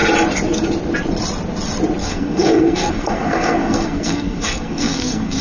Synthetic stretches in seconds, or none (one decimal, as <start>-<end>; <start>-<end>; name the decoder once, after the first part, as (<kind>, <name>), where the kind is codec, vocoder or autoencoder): 2.0-5.4 (codec, SNAC)